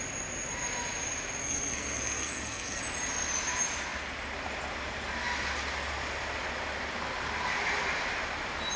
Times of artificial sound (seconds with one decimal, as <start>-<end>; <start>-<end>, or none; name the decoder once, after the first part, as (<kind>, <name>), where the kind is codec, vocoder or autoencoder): 1.4-2.8 (codec, SNAC)